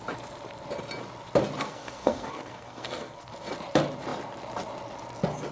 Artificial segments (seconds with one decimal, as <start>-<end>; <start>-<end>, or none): 1.6-3.3